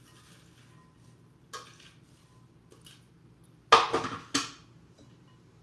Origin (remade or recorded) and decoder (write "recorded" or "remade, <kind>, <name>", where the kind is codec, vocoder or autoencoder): recorded